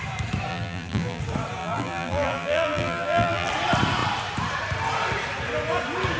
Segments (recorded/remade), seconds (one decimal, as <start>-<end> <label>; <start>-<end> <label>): 0.0-0.5 recorded; 0.5-1.2 remade; 1.2-1.6 recorded; 1.6-3.5 remade; 3.5-6.2 recorded